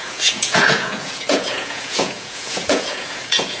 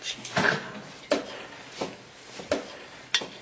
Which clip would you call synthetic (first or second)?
first